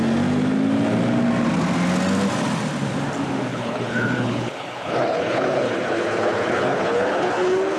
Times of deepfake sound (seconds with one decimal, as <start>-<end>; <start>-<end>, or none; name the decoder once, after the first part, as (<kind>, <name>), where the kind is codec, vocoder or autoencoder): 3.5-7.8 (codec, HILCodec)